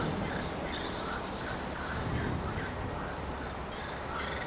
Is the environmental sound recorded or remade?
recorded